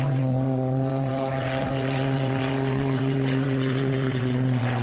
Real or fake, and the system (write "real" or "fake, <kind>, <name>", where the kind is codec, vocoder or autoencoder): fake, vocoder, WaveNeXt